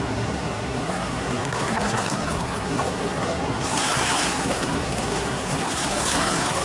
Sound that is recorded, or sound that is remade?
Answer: remade